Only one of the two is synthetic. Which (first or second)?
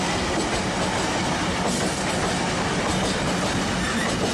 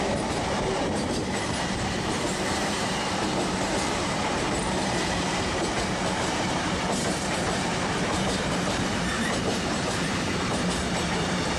second